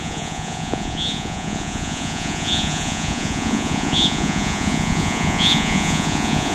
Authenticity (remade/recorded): remade